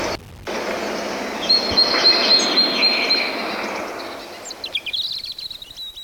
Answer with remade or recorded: recorded